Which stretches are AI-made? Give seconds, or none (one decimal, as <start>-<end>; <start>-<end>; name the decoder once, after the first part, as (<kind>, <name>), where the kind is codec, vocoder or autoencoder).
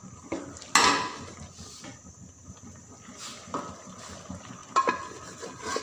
none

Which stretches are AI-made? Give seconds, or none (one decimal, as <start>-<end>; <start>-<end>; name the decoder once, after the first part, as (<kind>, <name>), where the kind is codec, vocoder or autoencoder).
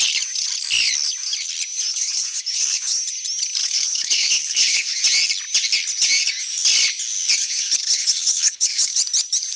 1.9-3.0 (codec, HILCodec); 3.6-5.0; 7.4-9.0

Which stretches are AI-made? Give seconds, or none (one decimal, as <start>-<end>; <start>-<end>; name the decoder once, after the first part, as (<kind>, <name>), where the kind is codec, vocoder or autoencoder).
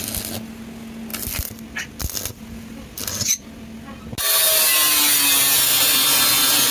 none